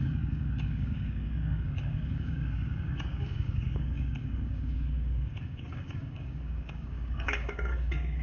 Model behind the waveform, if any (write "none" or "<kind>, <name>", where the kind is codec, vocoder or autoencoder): codec, DAC